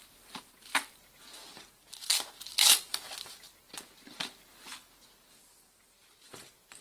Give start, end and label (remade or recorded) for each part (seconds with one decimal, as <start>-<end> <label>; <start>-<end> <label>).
0.0-6.0 recorded; 6.0-6.8 remade